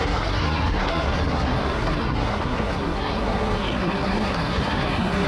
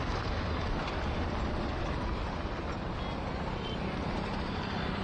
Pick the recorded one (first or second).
second